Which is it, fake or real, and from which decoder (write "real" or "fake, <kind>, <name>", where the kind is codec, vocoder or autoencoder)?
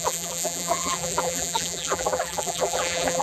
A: fake, vocoder, BigVGAN v2